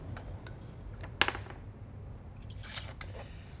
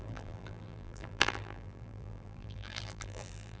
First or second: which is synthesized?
second